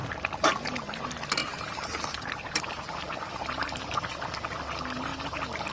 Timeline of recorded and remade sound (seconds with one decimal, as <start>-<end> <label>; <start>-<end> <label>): 0.0-0.9 remade; 0.9-1.4 recorded; 1.4-3.0 remade; 3.0-3.4 recorded; 3.4-4.1 remade; 4.1-5.1 recorded; 5.1-5.7 remade